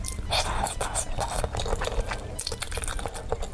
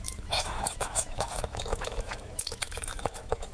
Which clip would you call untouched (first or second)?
first